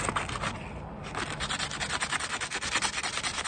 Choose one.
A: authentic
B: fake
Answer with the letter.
A